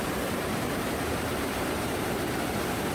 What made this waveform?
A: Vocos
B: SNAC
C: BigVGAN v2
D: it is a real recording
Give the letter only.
C